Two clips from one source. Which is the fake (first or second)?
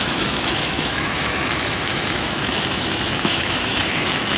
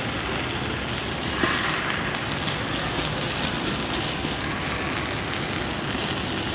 first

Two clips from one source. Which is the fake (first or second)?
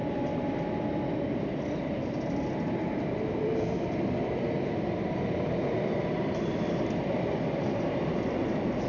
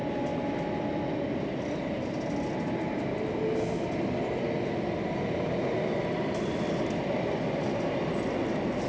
first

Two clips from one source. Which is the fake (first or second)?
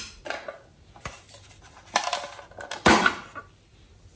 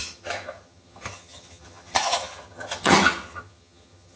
second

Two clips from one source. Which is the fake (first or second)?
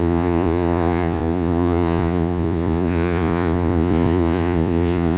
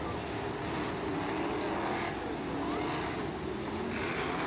first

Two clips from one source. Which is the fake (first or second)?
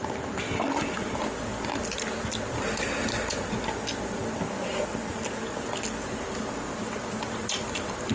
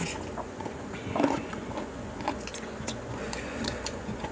second